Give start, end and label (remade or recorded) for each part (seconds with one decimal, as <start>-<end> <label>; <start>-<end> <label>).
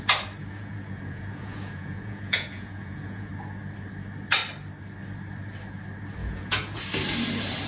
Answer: 0.0-0.4 recorded; 0.4-3.3 remade; 3.3-6.2 recorded; 6.2-6.8 remade; 6.8-7.7 recorded